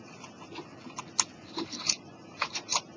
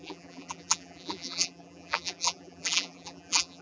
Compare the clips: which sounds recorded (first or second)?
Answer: first